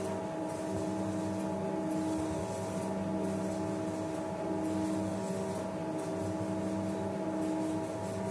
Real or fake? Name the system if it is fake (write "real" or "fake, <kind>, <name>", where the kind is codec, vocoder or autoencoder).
real